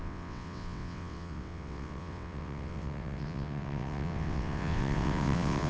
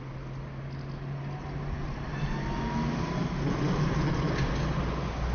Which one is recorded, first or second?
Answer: second